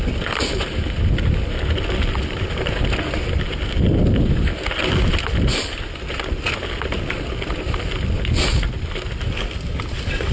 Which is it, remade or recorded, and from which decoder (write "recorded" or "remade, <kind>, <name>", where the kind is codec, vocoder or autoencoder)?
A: recorded